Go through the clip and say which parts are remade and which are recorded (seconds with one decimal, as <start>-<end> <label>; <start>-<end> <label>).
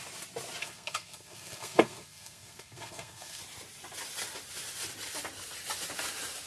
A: 0.0-0.6 recorded; 0.6-3.4 remade; 3.4-6.5 recorded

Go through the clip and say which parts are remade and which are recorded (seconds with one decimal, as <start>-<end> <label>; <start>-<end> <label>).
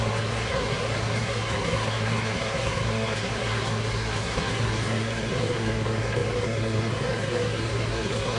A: 0.0-8.4 remade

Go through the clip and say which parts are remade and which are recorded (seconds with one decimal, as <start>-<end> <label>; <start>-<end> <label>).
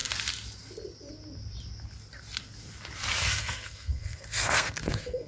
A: 0.0-3.2 recorded; 3.2-5.3 remade